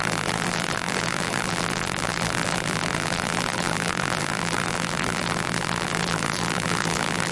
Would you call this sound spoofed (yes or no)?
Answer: yes